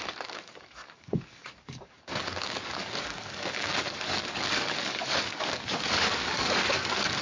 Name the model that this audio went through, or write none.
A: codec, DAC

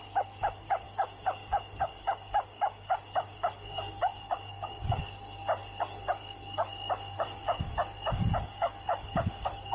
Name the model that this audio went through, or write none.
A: codec, DAC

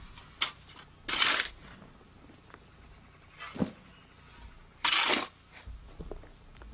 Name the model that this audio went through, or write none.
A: none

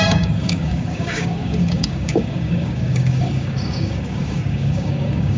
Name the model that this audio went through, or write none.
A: codec, DAC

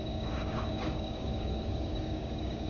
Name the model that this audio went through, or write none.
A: codec, DAC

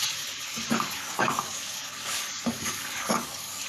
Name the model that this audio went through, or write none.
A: codec, DAC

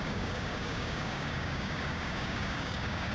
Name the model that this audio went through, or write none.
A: codec, DAC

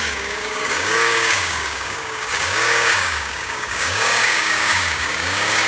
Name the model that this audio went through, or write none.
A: codec, DAC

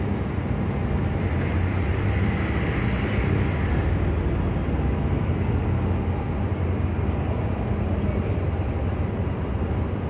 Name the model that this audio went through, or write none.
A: none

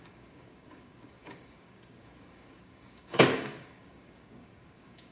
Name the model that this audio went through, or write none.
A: codec, DAC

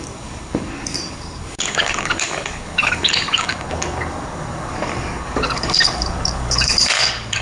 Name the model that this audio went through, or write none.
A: codec, DAC